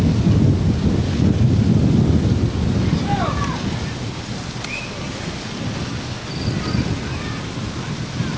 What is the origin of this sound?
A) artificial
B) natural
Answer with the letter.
B